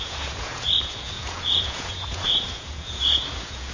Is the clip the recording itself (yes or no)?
no